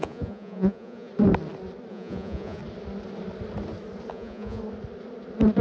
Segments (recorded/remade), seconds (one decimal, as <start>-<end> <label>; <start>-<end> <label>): 0.0-1.1 remade; 1.1-1.9 recorded; 1.9-2.6 remade; 2.6-4.1 recorded; 4.1-4.6 remade; 4.6-5.6 recorded

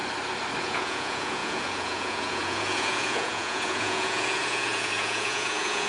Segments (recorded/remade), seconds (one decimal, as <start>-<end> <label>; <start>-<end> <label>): 0.0-0.6 recorded; 0.6-5.9 remade